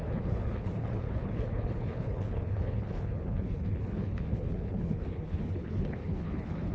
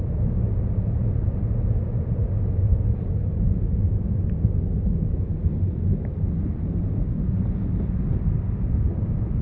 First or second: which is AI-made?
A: first